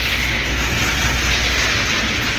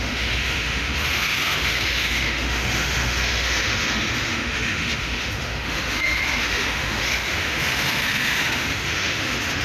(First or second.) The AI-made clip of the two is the second